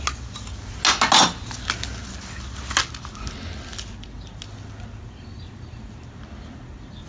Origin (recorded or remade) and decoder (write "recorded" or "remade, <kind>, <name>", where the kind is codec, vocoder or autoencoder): recorded